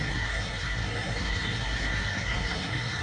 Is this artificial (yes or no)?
yes